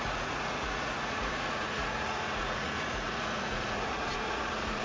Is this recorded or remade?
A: remade